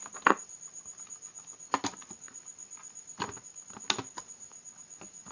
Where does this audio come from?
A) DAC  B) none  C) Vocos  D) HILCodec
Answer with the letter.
B